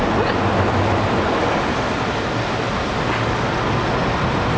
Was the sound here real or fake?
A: real